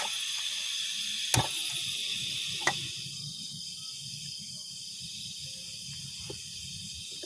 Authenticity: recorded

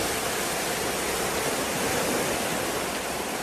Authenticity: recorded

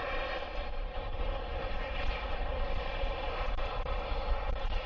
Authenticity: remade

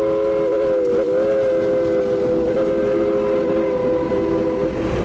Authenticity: recorded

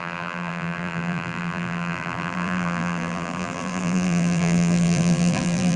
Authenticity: remade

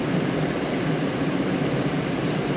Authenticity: remade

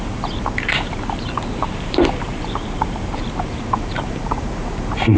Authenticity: remade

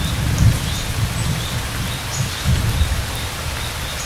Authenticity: recorded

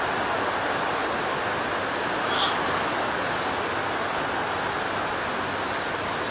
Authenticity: recorded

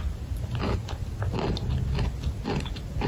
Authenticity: recorded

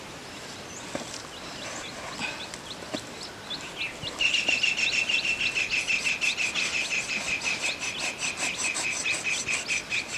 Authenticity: recorded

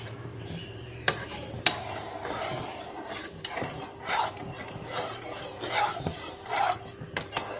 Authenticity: remade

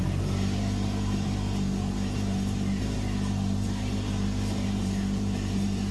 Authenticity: remade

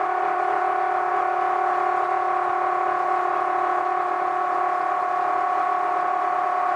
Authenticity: recorded